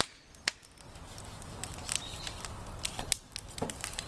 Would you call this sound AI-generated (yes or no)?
no